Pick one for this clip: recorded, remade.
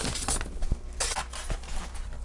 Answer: recorded